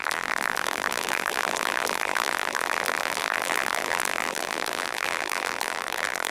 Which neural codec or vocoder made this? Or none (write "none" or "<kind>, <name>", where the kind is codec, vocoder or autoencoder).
vocoder, BigVGAN v2